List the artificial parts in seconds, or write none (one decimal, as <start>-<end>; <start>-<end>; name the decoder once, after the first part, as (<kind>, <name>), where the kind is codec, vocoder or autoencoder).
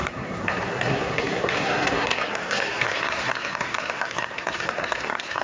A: 0.0-5.4 (codec, SNAC)